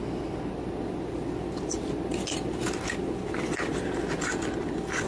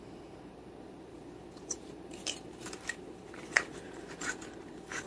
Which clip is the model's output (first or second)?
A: second